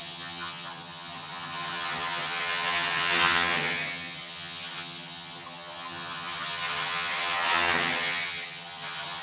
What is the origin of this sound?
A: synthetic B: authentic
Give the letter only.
A